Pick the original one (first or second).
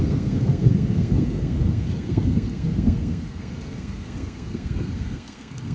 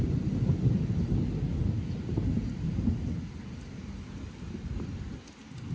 second